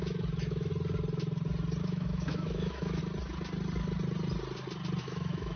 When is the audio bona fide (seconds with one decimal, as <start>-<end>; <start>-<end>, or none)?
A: 0.7-1.8; 3.0-5.0

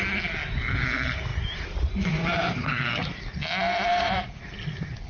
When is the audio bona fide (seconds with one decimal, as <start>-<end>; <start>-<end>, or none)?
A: 0.0-1.3; 3.2-3.9; 4.5-5.1